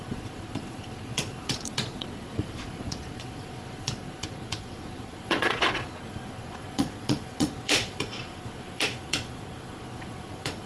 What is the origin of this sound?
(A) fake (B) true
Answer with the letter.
A